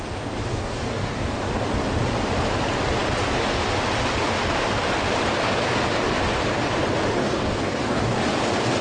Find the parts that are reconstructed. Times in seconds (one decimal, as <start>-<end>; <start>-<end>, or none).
0.5-1.4; 7.2-8.2